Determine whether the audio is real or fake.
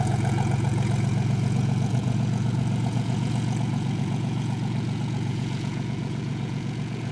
fake